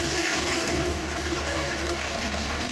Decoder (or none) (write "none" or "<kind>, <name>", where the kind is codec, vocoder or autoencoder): codec, DAC